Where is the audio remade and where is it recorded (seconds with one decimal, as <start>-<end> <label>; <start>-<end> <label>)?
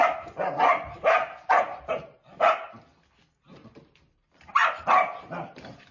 0.0-1.2 remade; 1.2-3.8 recorded; 3.8-4.6 remade; 4.6-5.3 recorded; 5.3-5.9 remade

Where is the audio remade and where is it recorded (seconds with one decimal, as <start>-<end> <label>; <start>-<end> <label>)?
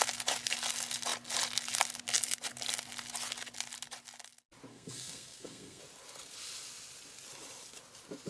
0.0-4.7 recorded; 4.7-5.8 remade; 5.8-8.3 recorded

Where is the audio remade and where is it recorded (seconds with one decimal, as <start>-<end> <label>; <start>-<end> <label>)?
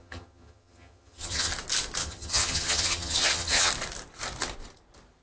0.0-1.5 remade; 1.5-2.0 recorded; 2.0-3.7 remade; 3.7-5.2 recorded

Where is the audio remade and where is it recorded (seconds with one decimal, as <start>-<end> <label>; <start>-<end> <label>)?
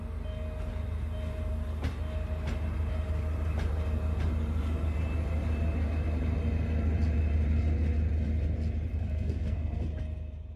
0.0-8.9 recorded; 8.9-9.8 remade; 9.8-10.6 recorded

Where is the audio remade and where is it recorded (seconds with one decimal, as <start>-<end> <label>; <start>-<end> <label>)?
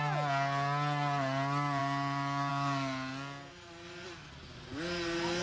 0.0-5.4 recorded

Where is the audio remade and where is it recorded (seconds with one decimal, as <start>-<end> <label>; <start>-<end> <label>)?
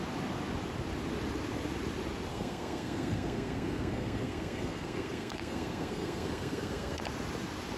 0.0-2.3 recorded; 2.3-7.0 remade; 7.0-7.8 recorded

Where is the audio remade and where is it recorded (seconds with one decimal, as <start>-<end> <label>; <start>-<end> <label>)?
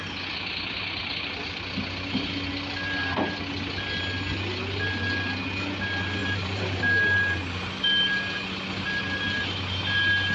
0.0-6.2 recorded; 6.2-6.8 remade; 6.8-10.3 recorded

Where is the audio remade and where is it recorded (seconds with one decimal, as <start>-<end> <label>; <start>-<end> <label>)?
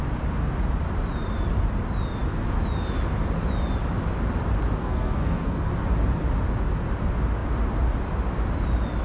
0.0-4.8 recorded; 4.8-5.7 remade; 5.7-9.0 recorded